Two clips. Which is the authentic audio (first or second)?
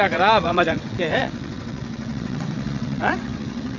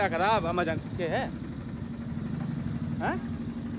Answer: second